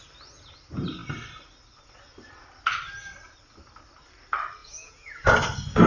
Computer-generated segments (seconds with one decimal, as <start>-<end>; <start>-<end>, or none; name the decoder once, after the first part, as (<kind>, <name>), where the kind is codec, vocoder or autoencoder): 4.6-5.2 (vocoder, Vocos)